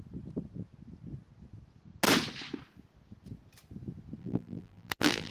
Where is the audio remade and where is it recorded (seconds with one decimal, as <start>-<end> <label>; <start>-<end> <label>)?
0.0-4.2 recorded; 4.2-5.3 remade